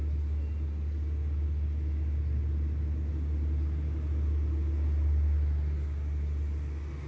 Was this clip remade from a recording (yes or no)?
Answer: no